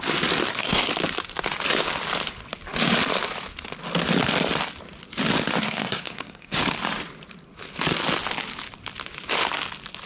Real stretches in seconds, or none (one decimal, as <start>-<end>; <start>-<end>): 0.0-0.4; 0.9-5.6; 6.6-10.1